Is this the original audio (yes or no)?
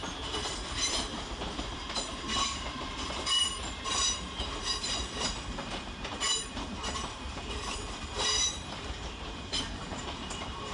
no